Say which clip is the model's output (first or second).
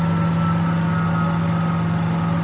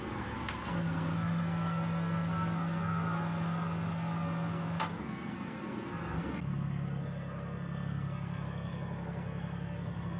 second